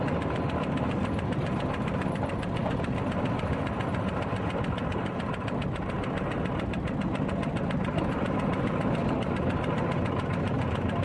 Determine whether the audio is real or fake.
real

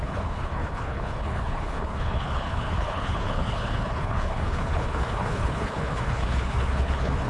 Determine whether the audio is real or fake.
fake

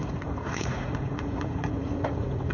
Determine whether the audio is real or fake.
fake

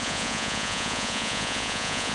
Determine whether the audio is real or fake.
fake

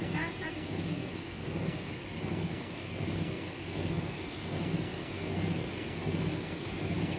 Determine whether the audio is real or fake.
fake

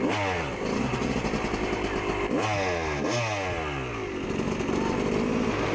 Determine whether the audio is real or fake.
real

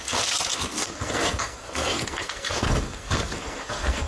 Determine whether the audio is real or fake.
fake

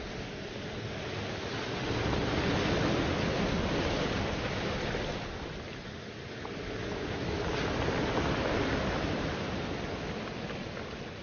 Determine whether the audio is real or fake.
real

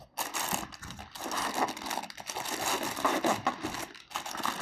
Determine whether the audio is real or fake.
real